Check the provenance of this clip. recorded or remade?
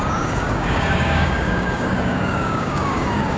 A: remade